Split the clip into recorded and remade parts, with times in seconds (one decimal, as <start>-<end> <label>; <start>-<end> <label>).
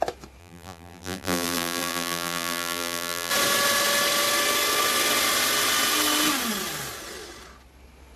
0.0-0.4 recorded; 0.4-3.3 remade; 3.3-8.2 recorded